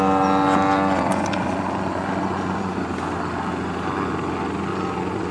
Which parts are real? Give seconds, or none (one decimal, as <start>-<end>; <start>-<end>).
0.0-1.1; 2.8-4.7